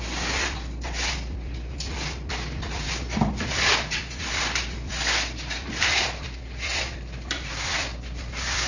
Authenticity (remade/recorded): recorded